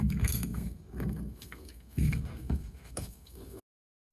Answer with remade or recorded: remade